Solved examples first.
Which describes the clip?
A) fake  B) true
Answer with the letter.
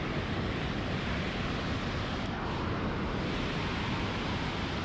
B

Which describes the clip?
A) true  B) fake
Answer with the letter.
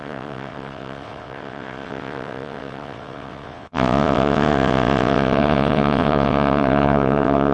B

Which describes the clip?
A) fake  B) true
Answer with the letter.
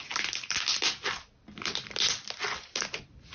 B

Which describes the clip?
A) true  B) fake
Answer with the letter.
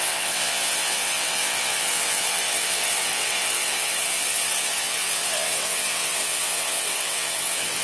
B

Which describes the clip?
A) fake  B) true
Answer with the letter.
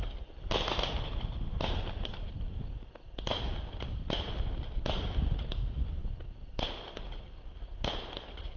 B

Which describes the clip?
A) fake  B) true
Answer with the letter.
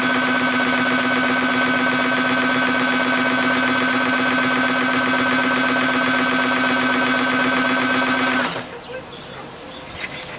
B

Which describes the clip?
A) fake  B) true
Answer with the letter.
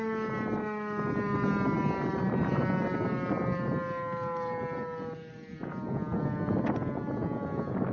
B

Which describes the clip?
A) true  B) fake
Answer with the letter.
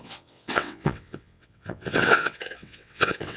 B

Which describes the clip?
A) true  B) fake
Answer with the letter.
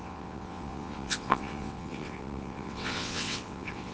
B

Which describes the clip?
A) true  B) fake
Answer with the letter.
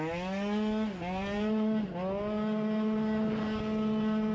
A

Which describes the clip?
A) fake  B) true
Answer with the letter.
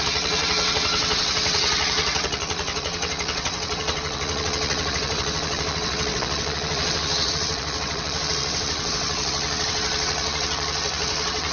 A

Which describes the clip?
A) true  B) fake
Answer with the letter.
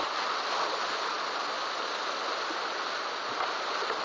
A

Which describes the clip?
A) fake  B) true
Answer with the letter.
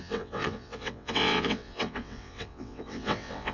A